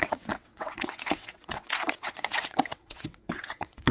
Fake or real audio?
fake